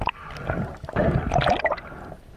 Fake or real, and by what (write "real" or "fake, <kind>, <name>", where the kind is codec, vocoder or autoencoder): real